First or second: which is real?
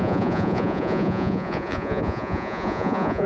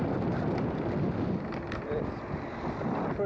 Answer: second